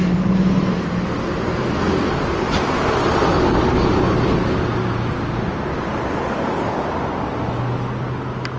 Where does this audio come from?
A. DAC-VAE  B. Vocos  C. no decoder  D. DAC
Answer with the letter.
C